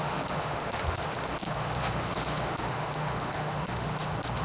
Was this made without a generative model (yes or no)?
no